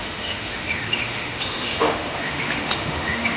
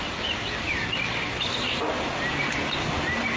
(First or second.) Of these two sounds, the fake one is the first